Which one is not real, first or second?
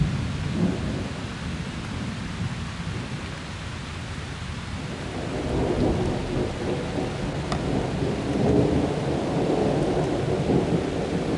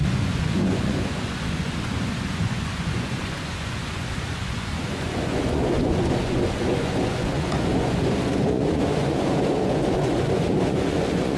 second